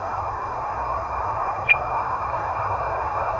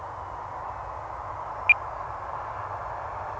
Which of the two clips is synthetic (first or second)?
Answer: first